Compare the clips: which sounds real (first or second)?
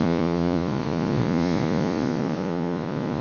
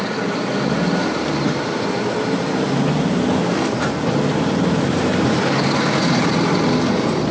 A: second